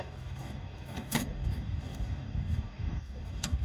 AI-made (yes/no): yes